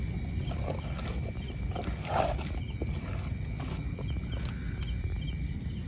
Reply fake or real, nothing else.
real